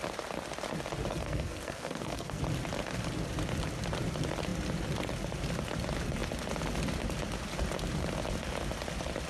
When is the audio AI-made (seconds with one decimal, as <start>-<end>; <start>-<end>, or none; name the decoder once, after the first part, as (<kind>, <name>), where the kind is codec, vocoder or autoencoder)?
1.1-2.4 (codec, SNAC)